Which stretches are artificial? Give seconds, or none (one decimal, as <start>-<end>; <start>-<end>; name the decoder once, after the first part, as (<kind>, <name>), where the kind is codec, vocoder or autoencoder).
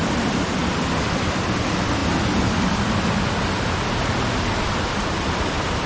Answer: 0.0-2.0 (vocoder, BigVGAN v2); 4.6-5.9